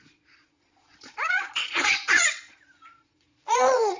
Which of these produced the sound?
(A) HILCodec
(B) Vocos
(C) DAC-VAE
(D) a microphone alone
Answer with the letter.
B